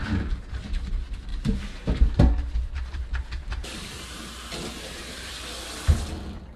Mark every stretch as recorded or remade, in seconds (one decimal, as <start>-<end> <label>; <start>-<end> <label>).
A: 0.0-1.3 recorded; 1.3-5.3 remade; 5.3-6.6 recorded

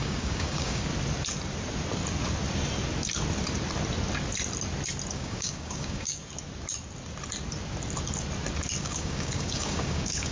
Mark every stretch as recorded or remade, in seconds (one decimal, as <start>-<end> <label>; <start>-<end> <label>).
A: 0.0-0.9 remade; 0.9-5.1 recorded; 5.1-6.2 remade; 6.2-8.8 recorded; 8.8-10.3 remade

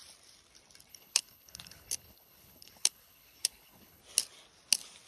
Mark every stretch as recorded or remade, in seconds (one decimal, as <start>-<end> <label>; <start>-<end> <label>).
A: 0.0-0.9 recorded; 0.9-4.0 remade; 4.0-5.1 recorded

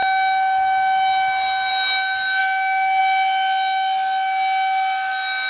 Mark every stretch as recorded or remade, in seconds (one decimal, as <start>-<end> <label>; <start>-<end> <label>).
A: 0.0-5.5 recorded

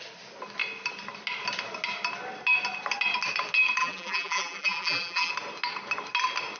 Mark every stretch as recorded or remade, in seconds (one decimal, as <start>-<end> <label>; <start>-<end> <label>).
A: 0.0-3.8 recorded; 3.8-5.3 remade; 5.3-6.6 recorded

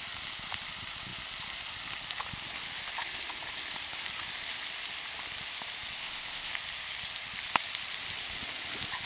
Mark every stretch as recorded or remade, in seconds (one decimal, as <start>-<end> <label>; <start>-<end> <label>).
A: 0.0-6.0 recorded; 6.0-6.5 remade; 6.5-9.1 recorded